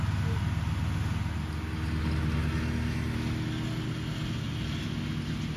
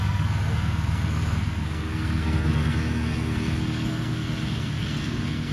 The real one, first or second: first